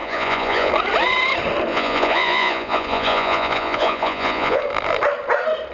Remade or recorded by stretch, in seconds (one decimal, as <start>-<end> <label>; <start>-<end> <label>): 0.0-0.7 remade; 0.7-1.7 recorded; 1.7-4.6 remade; 4.6-5.7 recorded

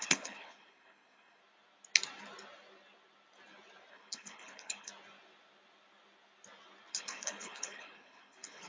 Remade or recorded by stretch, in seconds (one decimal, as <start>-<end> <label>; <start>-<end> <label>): 0.0-1.4 remade; 1.4-3.9 recorded; 3.9-4.9 remade; 4.9-6.9 recorded; 6.9-8.7 remade

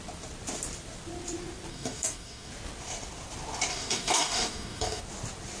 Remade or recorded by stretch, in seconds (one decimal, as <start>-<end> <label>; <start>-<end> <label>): 0.0-1.7 recorded; 1.7-2.5 remade; 2.5-3.7 recorded; 3.7-5.0 remade; 5.0-5.6 recorded

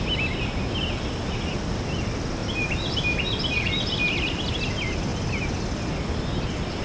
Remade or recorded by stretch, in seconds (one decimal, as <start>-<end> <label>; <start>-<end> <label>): 0.0-6.8 recorded

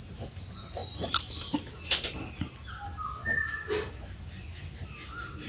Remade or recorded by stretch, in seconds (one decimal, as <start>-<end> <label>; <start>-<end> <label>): 0.0-5.5 recorded

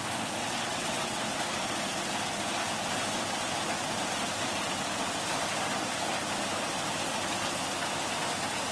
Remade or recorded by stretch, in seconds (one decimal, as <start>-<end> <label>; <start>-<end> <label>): 0.0-0.4 recorded; 0.4-1.2 remade; 1.2-8.7 recorded

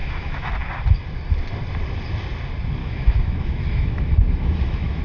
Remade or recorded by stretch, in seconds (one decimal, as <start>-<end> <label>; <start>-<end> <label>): 0.0-0.5 remade; 0.5-2.8 recorded; 2.8-5.0 remade